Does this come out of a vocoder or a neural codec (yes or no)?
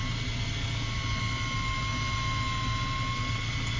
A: no